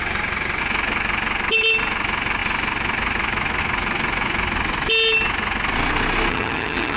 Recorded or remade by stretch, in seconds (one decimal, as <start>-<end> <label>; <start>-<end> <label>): 0.0-6.3 recorded; 6.3-7.0 remade

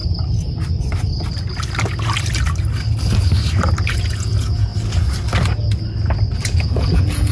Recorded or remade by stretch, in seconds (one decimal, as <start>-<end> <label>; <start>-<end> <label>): 0.0-3.9 recorded; 3.9-4.7 remade; 4.7-6.3 recorded; 6.3-7.3 remade